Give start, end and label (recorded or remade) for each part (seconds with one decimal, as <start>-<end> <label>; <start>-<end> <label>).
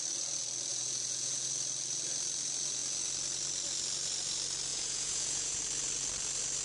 0.0-0.7 recorded; 0.7-1.5 remade; 1.5-4.7 recorded; 4.7-5.6 remade; 5.6-6.6 recorded